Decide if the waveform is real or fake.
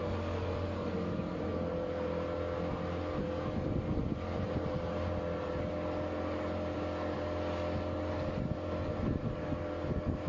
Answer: real